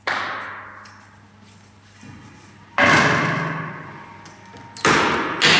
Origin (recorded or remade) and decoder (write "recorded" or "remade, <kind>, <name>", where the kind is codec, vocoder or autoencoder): recorded